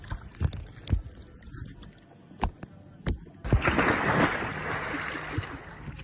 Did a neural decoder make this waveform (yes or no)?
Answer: no